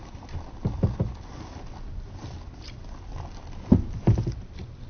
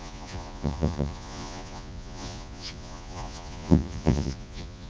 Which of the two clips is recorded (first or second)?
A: first